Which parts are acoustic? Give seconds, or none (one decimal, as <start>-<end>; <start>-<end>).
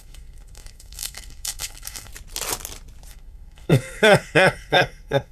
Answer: 2.1-3.1